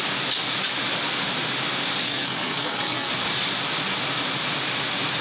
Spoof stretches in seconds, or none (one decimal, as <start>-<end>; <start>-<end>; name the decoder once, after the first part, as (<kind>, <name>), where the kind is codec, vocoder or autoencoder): 2.0-3.1 (codec, SNAC)